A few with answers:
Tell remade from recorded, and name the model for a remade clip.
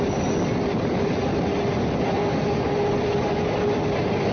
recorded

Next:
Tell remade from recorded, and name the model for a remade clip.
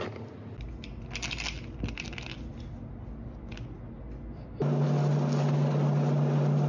recorded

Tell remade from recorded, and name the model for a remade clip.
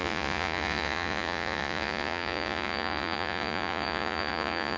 remade, vocoder, Vocos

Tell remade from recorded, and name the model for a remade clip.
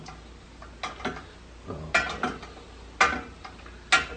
recorded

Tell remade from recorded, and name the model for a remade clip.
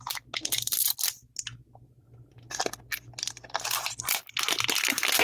recorded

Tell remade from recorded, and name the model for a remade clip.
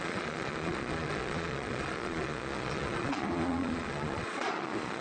remade, vocoder, Vocos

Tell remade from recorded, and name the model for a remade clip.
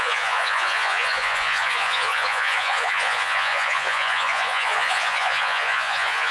remade, vocoder, Vocos